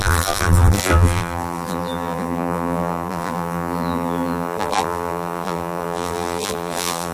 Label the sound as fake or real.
fake